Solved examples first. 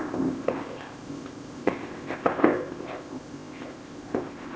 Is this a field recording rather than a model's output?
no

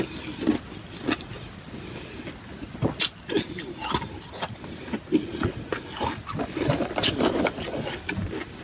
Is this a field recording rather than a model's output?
yes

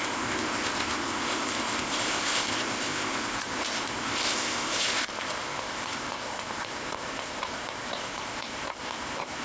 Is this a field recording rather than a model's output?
no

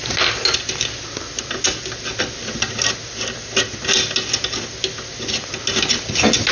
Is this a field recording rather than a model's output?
yes